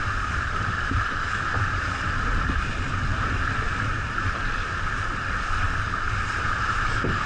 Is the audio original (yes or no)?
yes